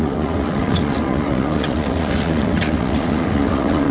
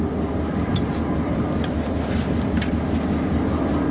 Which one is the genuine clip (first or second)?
second